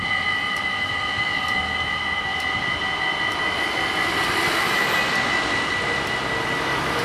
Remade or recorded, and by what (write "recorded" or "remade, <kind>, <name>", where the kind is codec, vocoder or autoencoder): recorded